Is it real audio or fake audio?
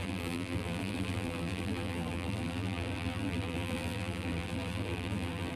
fake